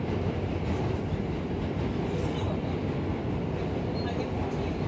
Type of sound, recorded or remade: recorded